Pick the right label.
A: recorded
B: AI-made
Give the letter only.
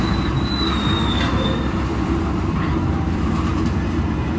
A